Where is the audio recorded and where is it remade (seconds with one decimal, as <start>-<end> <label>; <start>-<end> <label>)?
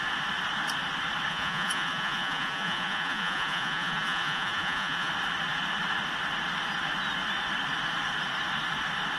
0.0-1.3 recorded; 1.3-5.1 remade; 5.1-9.2 recorded